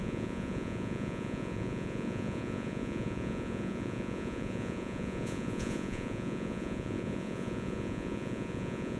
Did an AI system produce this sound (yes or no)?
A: yes